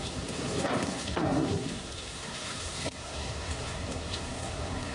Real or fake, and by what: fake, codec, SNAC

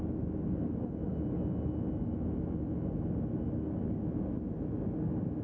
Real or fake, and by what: real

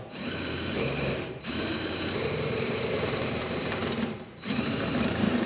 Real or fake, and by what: fake, vocoder, BigVGAN v2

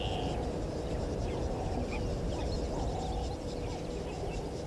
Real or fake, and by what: real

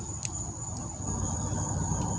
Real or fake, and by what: real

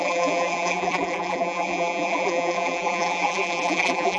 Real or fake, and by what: fake, vocoder, BigVGAN v2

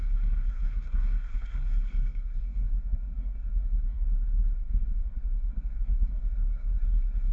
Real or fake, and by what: fake, codec, SNAC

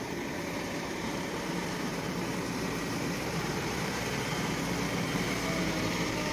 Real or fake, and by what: fake, vocoder, BigVGAN v2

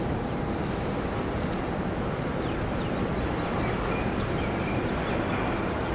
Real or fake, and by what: real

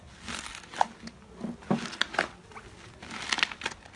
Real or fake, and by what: real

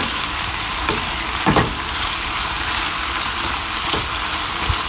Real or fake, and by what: real